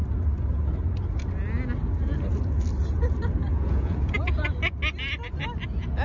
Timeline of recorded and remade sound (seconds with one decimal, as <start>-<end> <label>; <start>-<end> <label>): 0.0-3.5 recorded; 3.5-4.2 remade; 4.2-6.0 recorded